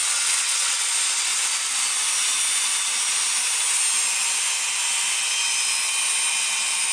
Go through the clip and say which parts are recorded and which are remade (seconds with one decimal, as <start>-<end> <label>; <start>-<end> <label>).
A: 0.0-0.9 remade; 0.9-6.9 recorded

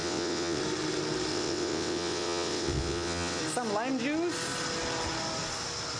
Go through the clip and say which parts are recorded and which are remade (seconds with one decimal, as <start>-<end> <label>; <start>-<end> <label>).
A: 0.0-0.6 remade; 0.6-1.3 recorded; 1.3-3.4 remade; 3.4-6.0 recorded

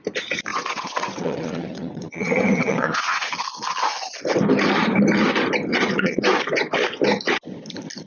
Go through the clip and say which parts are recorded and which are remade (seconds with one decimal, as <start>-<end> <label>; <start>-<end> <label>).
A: 0.0-0.5 recorded; 0.5-3.3 remade; 3.3-5.7 recorded; 5.7-6.4 remade; 6.4-8.1 recorded

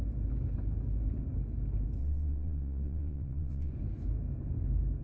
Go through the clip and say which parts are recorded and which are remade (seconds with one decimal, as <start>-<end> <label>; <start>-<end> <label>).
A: 0.0-2.0 recorded; 2.0-3.7 remade; 3.7-5.0 recorded

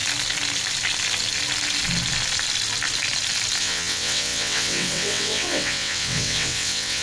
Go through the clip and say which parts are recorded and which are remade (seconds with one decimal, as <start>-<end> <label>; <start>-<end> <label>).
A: 0.0-3.6 recorded; 3.6-7.0 remade

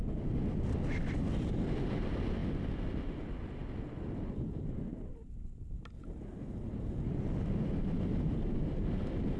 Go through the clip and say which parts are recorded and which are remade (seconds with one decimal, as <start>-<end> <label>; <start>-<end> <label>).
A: 0.0-9.4 recorded